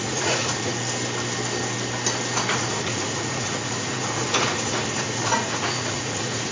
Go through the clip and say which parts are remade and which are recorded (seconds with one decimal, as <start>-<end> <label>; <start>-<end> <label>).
0.0-0.7 remade; 0.7-2.5 recorded; 2.5-6.5 remade